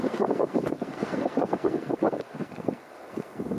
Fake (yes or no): yes